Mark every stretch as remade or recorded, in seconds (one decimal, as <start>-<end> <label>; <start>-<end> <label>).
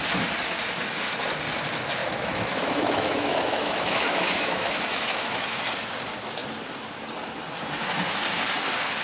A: 0.0-2.0 recorded; 2.0-5.6 remade; 5.6-9.0 recorded